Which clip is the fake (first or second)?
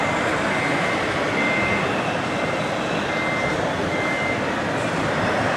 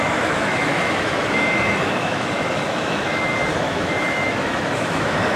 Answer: second